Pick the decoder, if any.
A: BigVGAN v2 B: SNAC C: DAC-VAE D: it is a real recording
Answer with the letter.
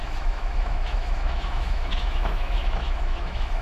C